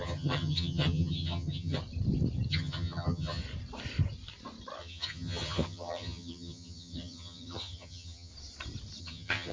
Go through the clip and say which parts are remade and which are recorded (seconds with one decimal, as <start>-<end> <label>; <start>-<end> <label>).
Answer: 0.0-1.8 remade; 1.8-2.5 recorded; 2.5-3.4 remade; 3.4-4.8 recorded; 4.8-8.3 remade; 8.3-9.0 recorded; 9.0-9.5 remade